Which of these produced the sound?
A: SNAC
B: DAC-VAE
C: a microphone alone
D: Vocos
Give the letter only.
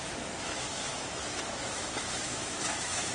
B